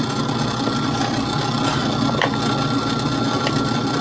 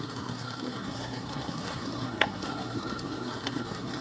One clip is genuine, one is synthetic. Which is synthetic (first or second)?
second